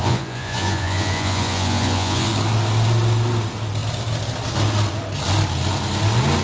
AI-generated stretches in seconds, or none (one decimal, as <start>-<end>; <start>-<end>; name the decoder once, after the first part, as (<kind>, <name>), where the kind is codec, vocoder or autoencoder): 0.0-2.3 (vocoder, Vocos)